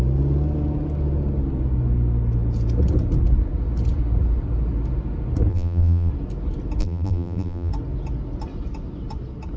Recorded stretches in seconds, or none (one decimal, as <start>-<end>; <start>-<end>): 0.0-5.5; 6.1-6.8; 7.7-9.6